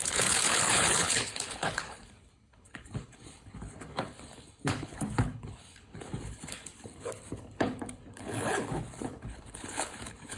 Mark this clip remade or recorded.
remade